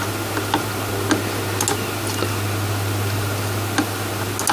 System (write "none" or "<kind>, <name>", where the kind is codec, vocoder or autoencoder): none